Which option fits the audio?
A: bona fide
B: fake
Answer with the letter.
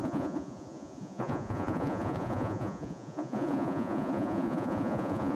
B